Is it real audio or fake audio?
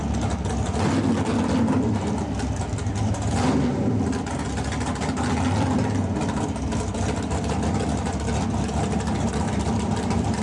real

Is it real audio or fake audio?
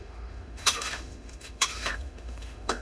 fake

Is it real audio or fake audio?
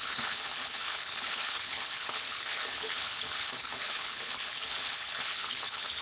fake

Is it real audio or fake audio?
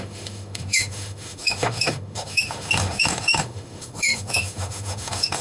fake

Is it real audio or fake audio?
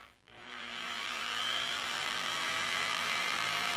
fake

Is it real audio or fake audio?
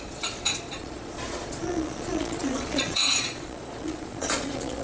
fake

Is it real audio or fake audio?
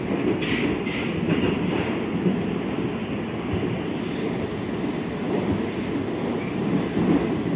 real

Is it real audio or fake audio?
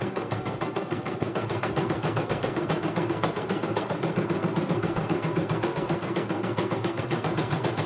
fake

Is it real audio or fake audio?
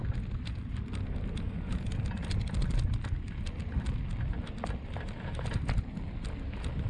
real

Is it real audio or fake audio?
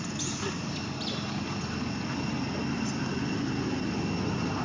real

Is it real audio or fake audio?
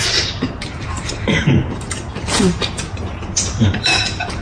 fake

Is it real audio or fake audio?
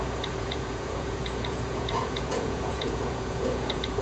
fake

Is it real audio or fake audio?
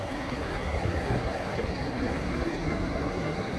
fake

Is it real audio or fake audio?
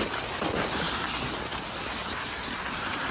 real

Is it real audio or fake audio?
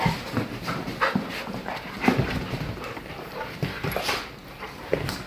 real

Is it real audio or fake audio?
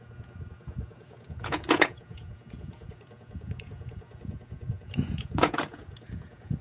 fake